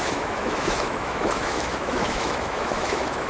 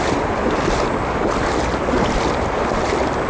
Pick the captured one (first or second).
second